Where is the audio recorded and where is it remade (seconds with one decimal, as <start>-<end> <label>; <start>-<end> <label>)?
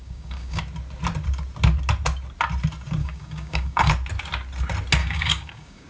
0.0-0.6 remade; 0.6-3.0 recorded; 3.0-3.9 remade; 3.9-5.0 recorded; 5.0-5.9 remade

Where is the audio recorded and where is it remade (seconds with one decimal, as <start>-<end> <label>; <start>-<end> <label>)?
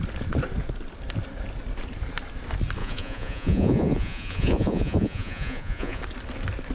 0.0-2.8 recorded; 2.8-6.0 remade; 6.0-6.7 recorded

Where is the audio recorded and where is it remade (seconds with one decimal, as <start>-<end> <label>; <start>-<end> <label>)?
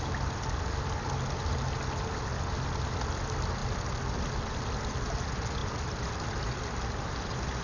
0.0-3.6 recorded; 3.6-4.2 remade; 4.2-5.6 recorded; 5.6-6.5 remade; 6.5-7.6 recorded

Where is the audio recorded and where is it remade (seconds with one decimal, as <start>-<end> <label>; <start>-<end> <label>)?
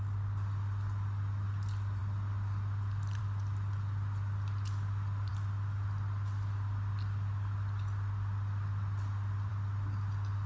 0.0-10.5 recorded